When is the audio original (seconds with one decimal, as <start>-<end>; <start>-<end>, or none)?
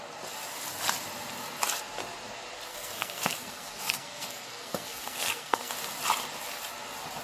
0.0-2.7; 5.7-7.2